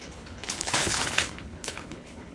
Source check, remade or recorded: remade